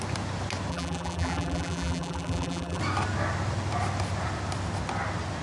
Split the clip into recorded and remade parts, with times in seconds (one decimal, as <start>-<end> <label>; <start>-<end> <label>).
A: 0.0-0.7 recorded; 0.7-2.8 remade; 2.8-5.4 recorded